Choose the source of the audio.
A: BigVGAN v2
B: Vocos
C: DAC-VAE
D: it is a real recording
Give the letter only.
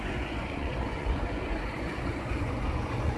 B